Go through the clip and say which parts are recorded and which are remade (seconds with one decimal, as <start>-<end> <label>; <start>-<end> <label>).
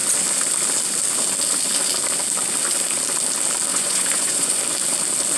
0.0-3.7 recorded; 3.7-4.6 remade; 4.6-5.4 recorded